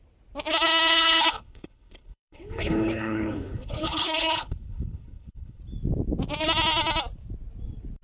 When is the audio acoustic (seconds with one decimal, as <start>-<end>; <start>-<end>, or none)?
0.0-0.9; 5.6-8.0